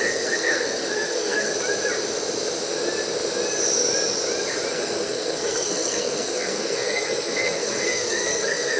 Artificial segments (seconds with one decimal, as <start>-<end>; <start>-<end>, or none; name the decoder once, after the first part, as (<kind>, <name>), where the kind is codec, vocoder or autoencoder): 0.0-1.5 (codec, SNAC); 4.7-8.8